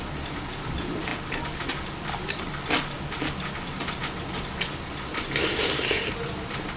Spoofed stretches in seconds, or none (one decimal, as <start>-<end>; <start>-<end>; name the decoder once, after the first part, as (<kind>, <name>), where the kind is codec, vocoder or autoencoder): none